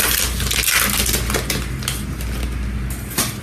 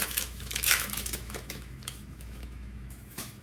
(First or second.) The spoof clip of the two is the second